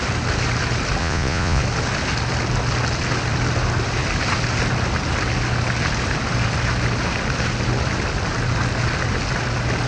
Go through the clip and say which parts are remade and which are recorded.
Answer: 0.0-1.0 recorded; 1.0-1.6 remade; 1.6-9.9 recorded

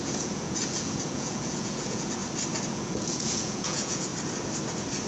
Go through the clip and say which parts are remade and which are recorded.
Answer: 0.0-2.2 remade; 2.2-2.7 recorded; 2.7-4.1 remade; 4.1-5.1 recorded

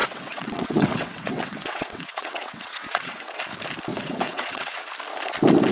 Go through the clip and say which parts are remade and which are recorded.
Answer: 0.0-3.4 remade; 3.4-3.9 recorded; 3.9-4.9 remade; 4.9-5.7 recorded